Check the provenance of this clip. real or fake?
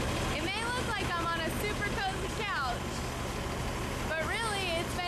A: real